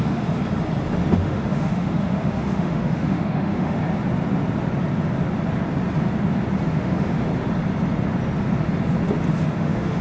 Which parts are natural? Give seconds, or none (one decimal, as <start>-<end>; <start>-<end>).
0.4-1.1; 3.8-6.7; 7.3-9.5